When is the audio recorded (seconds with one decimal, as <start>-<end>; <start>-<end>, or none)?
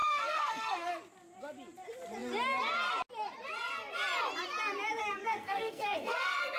0.9-5.0